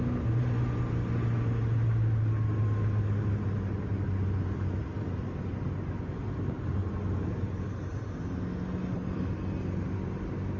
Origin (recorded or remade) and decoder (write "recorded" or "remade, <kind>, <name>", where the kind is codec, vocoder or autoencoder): recorded